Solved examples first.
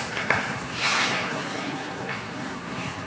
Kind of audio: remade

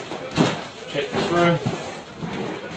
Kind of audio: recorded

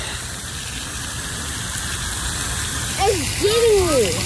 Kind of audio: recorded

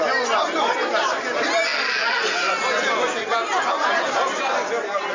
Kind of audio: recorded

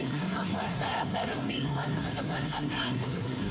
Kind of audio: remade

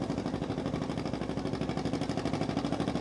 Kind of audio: recorded